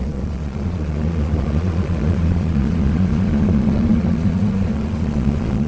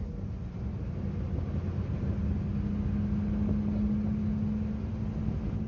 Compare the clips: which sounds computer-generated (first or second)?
first